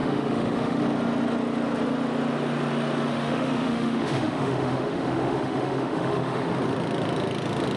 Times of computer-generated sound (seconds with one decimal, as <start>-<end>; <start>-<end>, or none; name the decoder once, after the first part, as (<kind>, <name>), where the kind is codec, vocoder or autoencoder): 0.0-0.8 (autoencoder, DAC-VAE); 3.1-6.5